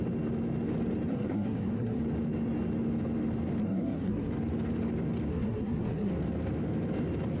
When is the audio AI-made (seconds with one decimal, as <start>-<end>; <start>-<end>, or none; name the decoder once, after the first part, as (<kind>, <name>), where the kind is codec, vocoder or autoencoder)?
1.1-2.0 (codec, SNAC); 3.6-4.3; 5.3-6.1